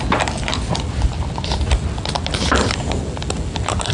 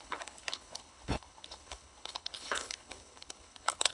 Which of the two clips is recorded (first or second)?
first